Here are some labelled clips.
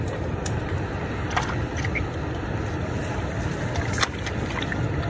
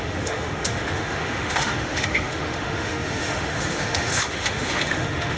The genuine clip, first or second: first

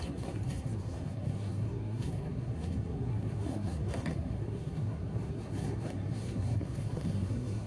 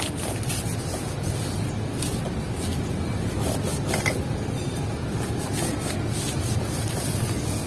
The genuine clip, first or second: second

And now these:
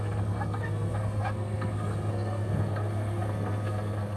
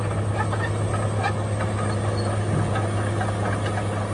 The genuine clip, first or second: second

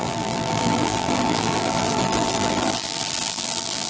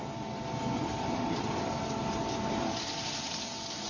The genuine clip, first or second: second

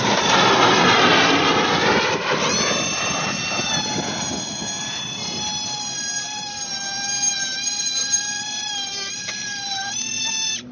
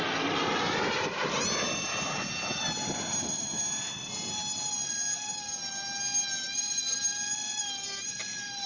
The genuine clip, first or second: second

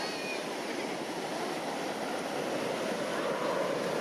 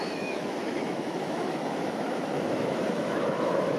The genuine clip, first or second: first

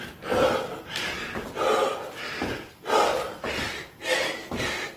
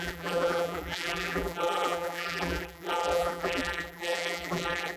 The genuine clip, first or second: first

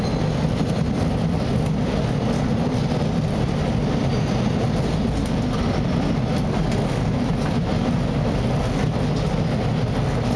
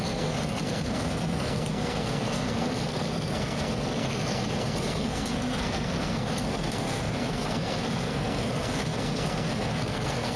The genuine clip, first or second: first